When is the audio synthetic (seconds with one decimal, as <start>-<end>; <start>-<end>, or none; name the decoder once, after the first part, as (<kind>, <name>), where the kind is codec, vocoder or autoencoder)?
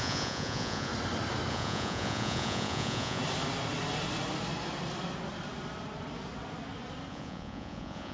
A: 0.0-0.9 (vocoder, Vocos); 1.5-3.2; 7.1-8.1